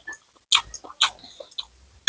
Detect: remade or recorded recorded